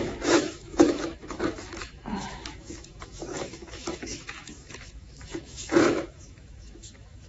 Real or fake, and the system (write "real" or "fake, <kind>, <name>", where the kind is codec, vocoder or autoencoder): fake, autoencoder, DAC-VAE